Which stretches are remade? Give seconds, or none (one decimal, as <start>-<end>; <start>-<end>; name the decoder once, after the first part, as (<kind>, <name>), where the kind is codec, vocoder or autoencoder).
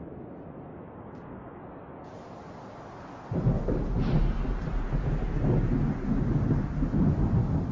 0.7-1.6 (codec, DAC)